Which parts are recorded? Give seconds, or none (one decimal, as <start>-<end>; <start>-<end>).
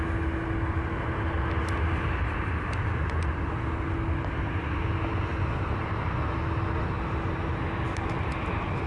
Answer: 0.0-8.9